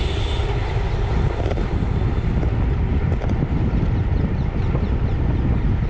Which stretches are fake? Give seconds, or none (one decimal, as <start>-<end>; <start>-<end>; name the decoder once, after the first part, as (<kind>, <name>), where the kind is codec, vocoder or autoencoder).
none